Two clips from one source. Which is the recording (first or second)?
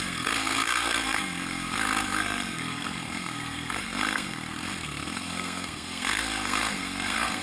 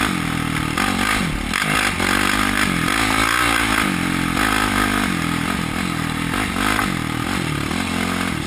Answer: second